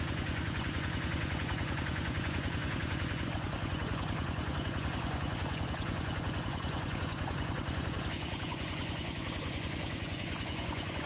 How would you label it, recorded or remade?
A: remade